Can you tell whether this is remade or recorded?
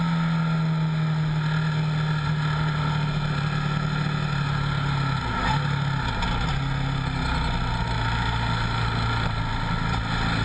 recorded